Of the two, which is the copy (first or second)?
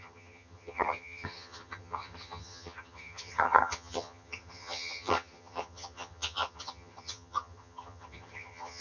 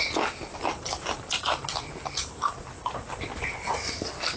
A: first